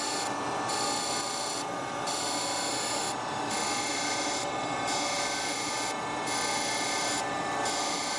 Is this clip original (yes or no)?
yes